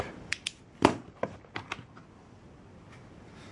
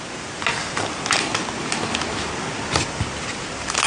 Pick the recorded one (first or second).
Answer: second